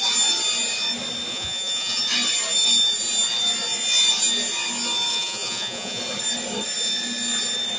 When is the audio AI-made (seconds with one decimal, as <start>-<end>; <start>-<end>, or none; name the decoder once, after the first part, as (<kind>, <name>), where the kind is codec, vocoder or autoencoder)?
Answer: 1.3-2.0 (vocoder, Vocos); 5.1-6.0